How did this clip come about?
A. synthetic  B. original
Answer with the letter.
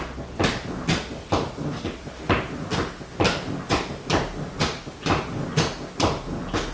B